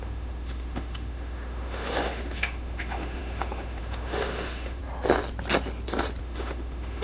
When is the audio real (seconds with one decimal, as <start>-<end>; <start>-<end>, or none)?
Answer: 4.8-6.2